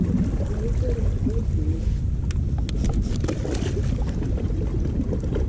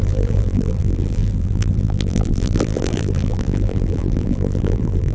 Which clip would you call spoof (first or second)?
second